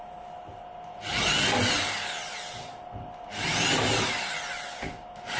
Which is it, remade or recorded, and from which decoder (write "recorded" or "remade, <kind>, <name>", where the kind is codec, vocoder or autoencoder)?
recorded